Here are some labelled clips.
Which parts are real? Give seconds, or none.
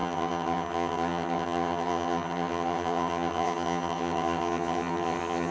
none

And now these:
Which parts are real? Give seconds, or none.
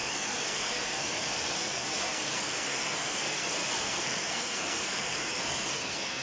none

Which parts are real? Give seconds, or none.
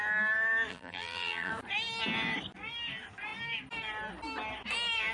0.0-0.7; 1.5-5.1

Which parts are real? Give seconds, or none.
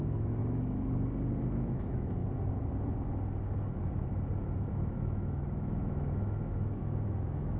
0.4-1.5; 2.2-4.7